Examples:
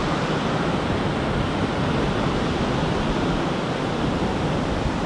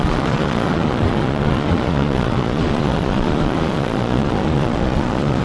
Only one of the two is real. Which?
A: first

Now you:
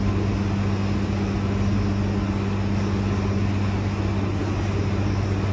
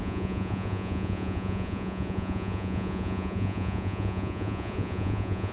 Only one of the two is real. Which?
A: first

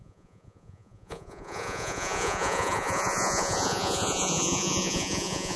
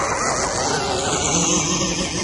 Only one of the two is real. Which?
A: second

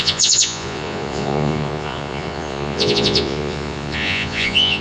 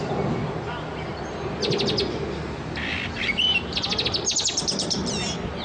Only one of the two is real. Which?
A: second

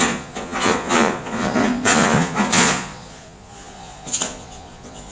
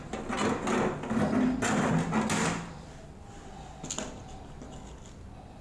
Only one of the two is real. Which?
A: second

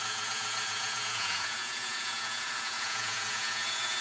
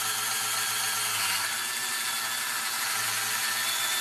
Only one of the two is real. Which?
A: second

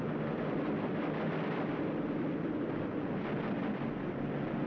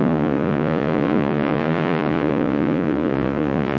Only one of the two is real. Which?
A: first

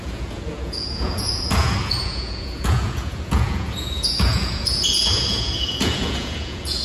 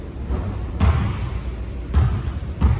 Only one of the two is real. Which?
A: second